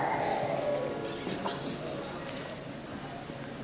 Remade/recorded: recorded